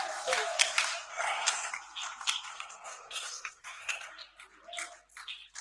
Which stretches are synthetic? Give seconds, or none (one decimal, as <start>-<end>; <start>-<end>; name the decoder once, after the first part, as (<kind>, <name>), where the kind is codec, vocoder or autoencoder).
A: 1.1-1.7 (codec, SNAC); 2.5-4.1